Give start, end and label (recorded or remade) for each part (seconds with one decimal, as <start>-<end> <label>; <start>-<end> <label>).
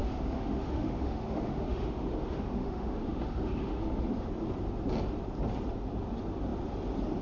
0.0-4.3 remade; 4.3-7.2 recorded